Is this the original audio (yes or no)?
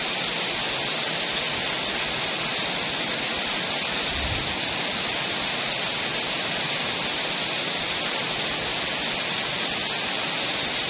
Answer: yes